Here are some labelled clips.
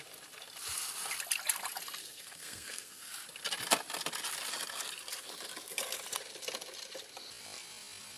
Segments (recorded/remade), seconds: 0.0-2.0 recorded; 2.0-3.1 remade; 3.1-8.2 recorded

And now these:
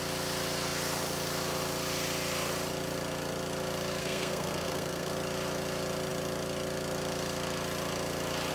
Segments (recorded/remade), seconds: 0.0-4.0 recorded; 4.0-5.1 remade; 5.1-8.5 recorded